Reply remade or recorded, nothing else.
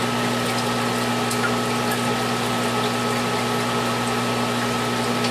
recorded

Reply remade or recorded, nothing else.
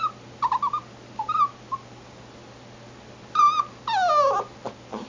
recorded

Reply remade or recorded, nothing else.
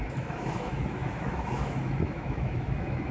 remade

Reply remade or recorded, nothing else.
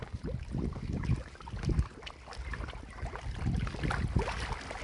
recorded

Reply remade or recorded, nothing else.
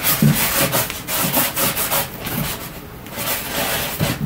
recorded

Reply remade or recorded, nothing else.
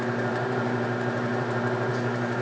remade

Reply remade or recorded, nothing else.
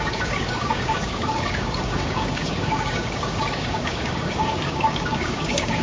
remade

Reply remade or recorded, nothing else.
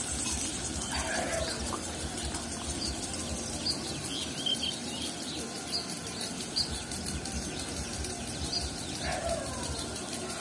recorded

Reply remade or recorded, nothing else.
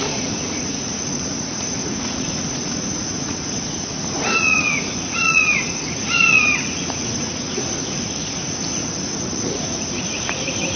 remade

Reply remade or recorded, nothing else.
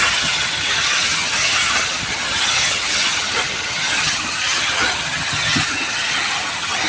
remade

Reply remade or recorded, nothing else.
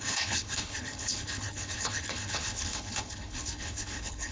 remade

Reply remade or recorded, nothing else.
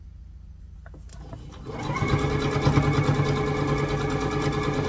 recorded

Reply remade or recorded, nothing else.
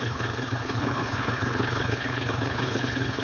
remade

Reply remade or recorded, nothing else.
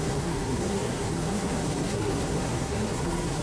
remade